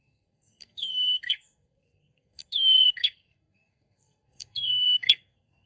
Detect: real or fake fake